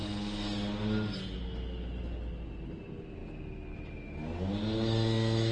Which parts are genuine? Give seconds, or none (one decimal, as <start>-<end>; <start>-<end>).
0.0-5.5